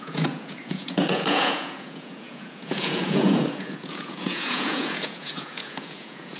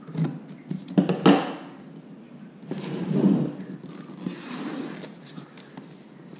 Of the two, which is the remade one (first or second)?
first